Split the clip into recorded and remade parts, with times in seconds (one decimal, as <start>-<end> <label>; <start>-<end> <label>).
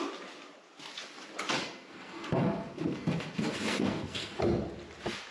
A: 0.0-1.6 recorded; 1.6-4.4 remade; 4.4-5.3 recorded